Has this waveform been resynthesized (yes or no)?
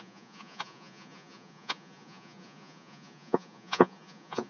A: yes